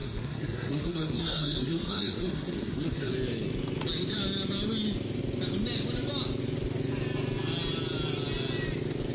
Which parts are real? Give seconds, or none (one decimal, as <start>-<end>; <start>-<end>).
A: 3.1-9.1